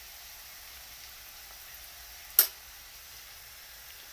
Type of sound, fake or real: real